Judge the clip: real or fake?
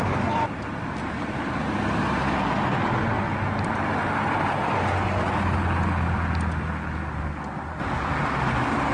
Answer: real